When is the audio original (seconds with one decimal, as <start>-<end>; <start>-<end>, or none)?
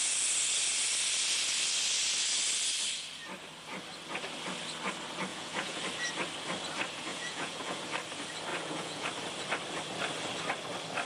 0.0-5.3; 5.8-7.1; 7.8-8.5; 9.1-11.1